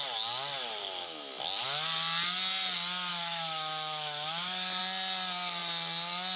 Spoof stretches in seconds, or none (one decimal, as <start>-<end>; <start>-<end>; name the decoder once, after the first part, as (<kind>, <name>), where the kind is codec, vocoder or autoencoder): 0.8-1.4 (autoencoder, DAC-VAE); 3.1-4.8